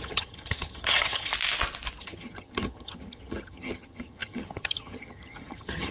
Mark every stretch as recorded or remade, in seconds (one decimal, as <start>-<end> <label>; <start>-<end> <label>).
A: 0.0-1.3 remade; 1.3-2.0 recorded; 2.0-5.9 remade